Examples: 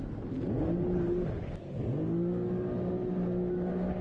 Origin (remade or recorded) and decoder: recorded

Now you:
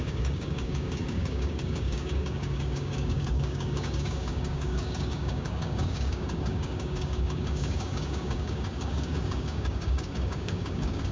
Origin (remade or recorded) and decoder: remade, codec, DAC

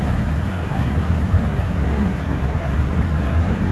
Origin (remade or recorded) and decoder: remade, codec, SNAC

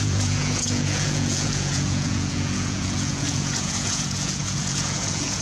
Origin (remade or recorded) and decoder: remade, vocoder, Vocos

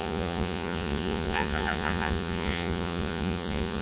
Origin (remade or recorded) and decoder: remade, vocoder, Vocos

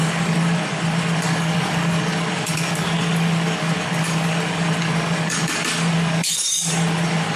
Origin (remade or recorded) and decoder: remade, codec, DAC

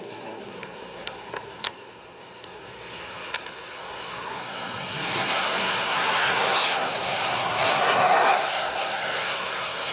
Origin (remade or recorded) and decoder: remade, codec, SNAC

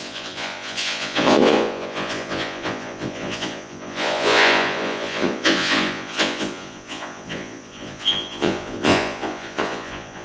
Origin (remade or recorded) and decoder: remade, vocoder, Vocos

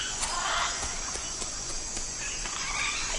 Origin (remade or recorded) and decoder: remade, vocoder, Vocos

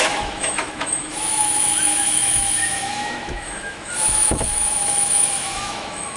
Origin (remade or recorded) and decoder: remade, autoencoder, DAC-VAE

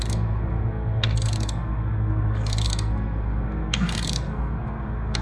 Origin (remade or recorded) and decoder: remade, codec, SNAC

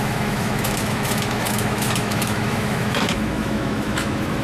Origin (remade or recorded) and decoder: remade, autoencoder, DAC-VAE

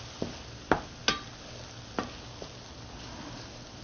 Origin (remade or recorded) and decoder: recorded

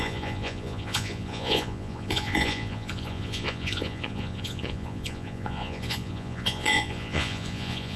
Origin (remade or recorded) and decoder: remade, vocoder, Vocos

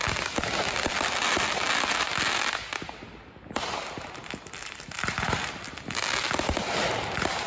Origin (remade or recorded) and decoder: recorded